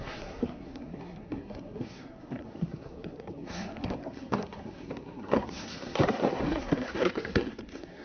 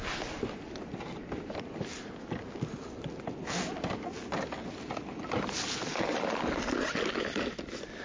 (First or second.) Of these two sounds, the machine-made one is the first